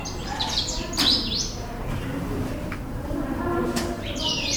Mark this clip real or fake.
fake